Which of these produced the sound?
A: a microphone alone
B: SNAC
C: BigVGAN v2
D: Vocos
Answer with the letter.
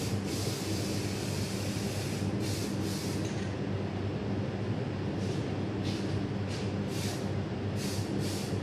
A